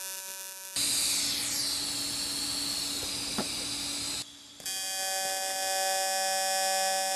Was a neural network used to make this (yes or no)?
no